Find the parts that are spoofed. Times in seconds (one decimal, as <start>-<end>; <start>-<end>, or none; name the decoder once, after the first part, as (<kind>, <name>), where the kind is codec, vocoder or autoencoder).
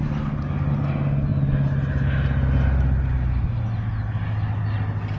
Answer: none